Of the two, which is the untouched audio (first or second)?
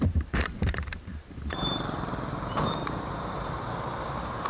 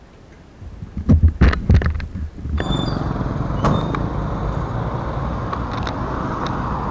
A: second